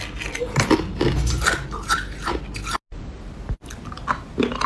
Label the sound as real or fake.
real